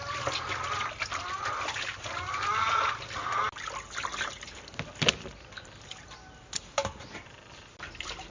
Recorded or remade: recorded